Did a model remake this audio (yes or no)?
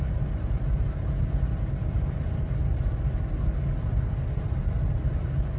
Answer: no